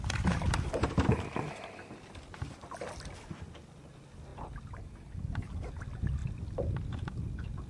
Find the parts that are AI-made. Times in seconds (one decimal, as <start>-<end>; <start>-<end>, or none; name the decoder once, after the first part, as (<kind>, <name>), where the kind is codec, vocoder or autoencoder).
none